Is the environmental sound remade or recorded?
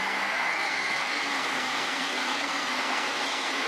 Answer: remade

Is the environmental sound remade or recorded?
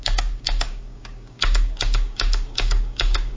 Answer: remade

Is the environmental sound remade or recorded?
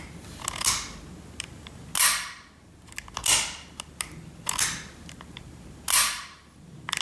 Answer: recorded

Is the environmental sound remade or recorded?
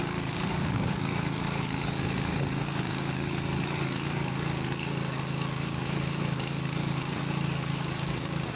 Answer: remade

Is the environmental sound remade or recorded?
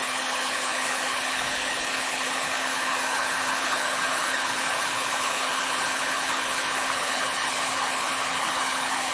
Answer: remade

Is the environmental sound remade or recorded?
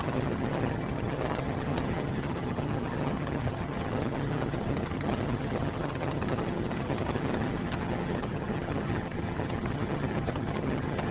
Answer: remade